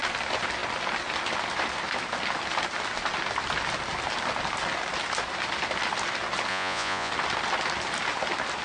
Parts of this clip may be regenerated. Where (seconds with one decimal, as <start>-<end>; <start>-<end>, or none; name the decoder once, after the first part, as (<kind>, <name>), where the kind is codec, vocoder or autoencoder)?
6.5-7.1 (vocoder, Vocos)